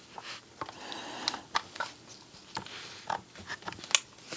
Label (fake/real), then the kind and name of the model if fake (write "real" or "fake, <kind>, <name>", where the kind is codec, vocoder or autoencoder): real